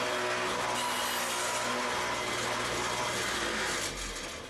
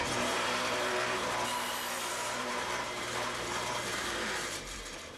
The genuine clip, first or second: first